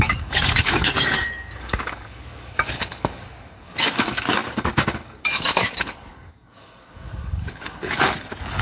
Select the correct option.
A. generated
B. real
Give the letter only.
A